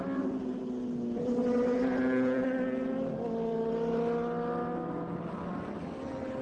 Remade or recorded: recorded